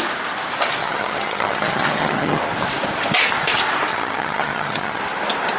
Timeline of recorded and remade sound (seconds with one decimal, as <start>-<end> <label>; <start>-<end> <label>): 0.0-0.8 recorded; 0.8-2.4 remade; 2.4-3.9 recorded; 3.9-5.0 remade; 5.0-5.6 recorded